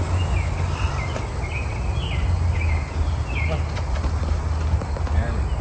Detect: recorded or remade recorded